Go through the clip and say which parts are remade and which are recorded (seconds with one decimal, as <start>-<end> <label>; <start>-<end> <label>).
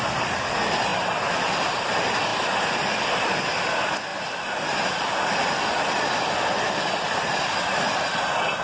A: 0.0-8.6 recorded